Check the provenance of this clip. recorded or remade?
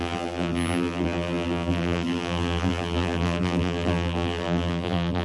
remade